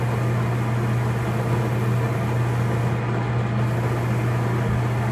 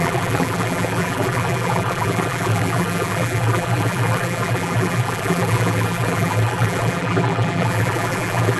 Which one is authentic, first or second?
first